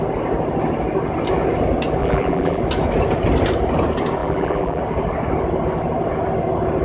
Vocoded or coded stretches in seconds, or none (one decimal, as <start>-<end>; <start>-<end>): 2.0-2.6; 4.2-4.8